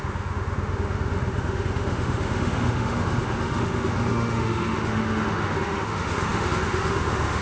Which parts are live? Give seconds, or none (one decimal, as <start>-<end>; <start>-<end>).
none